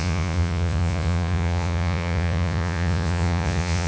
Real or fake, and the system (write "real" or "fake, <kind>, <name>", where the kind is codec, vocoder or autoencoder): fake, vocoder, Vocos